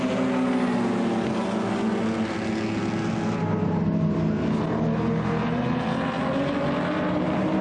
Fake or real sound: real